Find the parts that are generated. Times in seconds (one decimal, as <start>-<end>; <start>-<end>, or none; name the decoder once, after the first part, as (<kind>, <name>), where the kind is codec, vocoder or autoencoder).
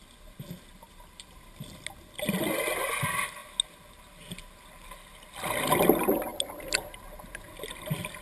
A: none